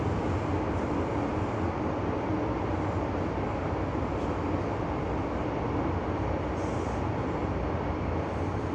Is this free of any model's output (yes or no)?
yes